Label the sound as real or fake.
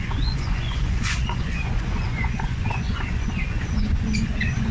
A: fake